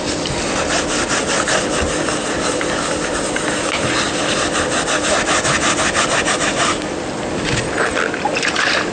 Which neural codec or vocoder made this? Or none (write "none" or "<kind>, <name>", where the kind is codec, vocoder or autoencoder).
none